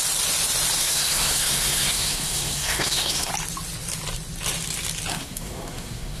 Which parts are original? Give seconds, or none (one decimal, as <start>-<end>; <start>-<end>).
0.0-0.8; 3.3-5.1